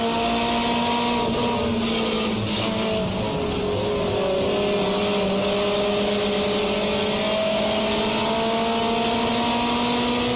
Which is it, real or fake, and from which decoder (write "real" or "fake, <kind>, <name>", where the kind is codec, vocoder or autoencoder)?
real